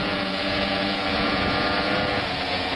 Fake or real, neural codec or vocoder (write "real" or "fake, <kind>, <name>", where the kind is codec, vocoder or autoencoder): fake, vocoder, Vocos